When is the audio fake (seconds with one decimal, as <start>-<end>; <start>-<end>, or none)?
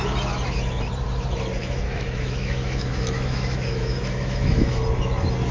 1.6-4.8